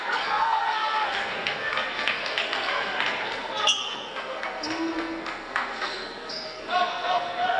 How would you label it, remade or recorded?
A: remade